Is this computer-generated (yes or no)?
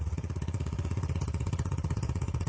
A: yes